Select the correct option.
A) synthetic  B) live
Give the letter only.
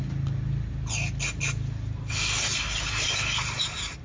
B